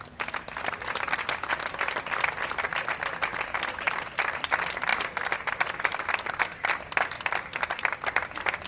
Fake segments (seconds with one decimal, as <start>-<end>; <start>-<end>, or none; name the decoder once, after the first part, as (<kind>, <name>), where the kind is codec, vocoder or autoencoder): none